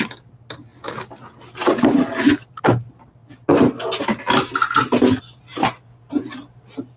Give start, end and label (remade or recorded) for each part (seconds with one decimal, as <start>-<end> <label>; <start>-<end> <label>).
0.0-7.0 recorded